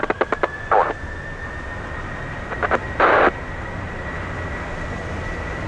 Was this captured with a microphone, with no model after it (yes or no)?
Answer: yes